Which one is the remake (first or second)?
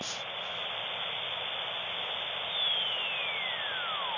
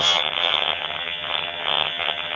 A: second